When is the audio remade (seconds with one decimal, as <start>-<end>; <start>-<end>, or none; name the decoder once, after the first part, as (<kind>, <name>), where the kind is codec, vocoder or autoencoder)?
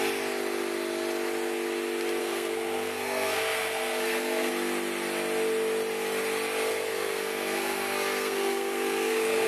2.2-4.5 (codec, SNAC); 6.7-9.5